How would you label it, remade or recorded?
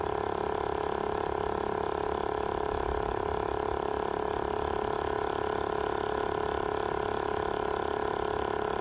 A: recorded